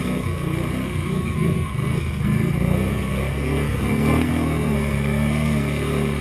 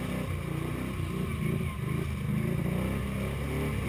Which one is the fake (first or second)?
first